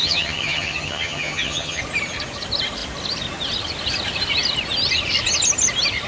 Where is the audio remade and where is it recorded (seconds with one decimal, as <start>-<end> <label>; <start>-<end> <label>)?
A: 0.0-1.8 remade; 1.8-6.1 recorded